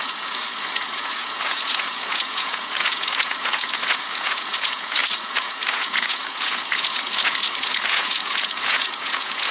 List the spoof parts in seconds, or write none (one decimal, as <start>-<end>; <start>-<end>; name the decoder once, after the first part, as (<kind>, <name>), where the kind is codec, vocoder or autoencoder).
0.0-9.5 (vocoder, Vocos)